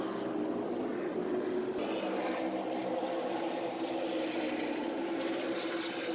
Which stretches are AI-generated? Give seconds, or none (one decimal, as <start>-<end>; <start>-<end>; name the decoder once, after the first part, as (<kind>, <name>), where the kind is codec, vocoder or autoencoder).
none